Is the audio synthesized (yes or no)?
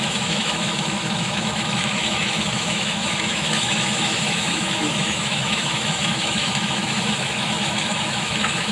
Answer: yes